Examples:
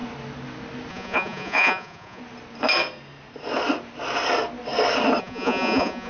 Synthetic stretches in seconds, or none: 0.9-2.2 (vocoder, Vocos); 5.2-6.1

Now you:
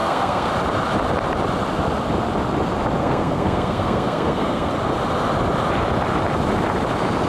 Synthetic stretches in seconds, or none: 0.0-0.5 (codec, SNAC); 3.0-4.7

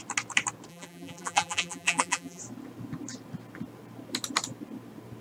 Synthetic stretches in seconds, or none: 0.7-2.4 (vocoder, BigVGAN v2)

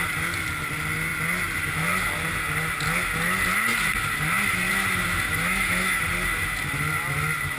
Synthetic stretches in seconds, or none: 5.3-6.0 (autoencoder, DAC-VAE)

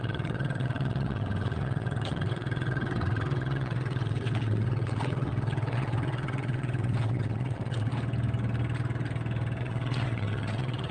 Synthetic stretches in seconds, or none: 0.0-7.9 (vocoder, WaveNeXt); 9.6-10.9